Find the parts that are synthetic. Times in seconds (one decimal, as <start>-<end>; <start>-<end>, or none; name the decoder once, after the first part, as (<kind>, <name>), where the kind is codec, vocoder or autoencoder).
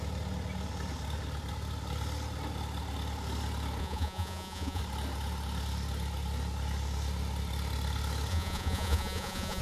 3.8-4.8 (vocoder, Vocos); 8.3-9.6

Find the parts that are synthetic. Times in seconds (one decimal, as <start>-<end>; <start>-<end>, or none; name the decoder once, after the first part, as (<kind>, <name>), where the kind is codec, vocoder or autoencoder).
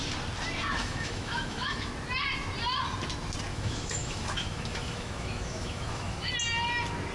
0.8-1.9 (autoencoder, DAC-VAE); 3.5-6.3